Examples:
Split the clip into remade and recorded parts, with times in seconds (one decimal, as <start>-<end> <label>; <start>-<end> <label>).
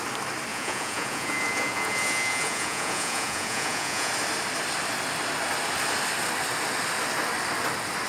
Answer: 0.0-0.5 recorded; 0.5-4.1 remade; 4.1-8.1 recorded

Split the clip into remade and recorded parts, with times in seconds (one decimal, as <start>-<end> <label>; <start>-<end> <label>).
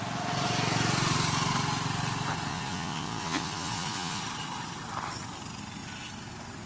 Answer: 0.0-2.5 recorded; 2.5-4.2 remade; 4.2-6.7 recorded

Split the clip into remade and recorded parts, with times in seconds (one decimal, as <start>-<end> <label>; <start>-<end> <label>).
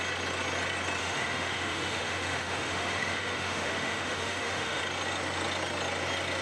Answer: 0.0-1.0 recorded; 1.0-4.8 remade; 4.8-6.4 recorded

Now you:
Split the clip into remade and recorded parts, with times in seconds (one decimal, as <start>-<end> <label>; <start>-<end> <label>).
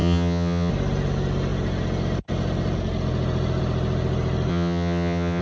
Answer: 0.0-0.7 remade; 0.7-4.5 recorded; 4.5-5.4 remade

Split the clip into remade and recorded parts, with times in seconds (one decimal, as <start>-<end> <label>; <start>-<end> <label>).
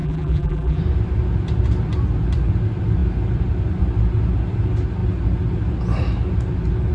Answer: 0.0-0.8 remade; 0.8-6.9 recorded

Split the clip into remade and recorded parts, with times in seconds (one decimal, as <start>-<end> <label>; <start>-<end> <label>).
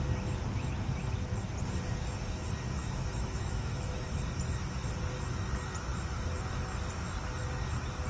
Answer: 0.0-2.8 recorded; 2.8-4.2 remade; 4.2-8.1 recorded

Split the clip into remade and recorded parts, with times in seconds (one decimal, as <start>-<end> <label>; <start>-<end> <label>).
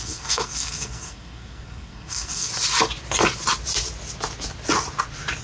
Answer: 0.0-2.5 remade; 2.5-5.4 recorded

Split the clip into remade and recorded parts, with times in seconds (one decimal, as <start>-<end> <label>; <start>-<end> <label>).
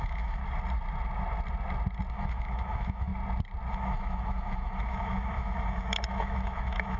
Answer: 0.0-0.4 remade; 0.4-2.1 recorded; 2.1-3.1 remade; 3.1-3.7 recorded; 3.7-7.0 remade